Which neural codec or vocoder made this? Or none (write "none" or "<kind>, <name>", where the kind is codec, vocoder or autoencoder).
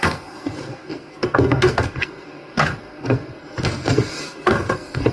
codec, SNAC